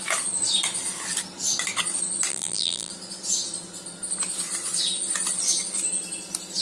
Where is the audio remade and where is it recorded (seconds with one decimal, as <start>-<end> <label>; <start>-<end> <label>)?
0.0-2.3 recorded; 2.3-2.9 remade; 2.9-6.6 recorded